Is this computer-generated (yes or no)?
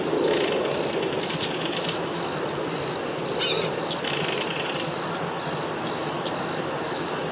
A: no